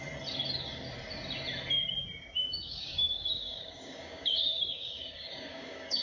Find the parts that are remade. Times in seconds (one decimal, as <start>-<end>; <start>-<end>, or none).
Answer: 2.4-6.0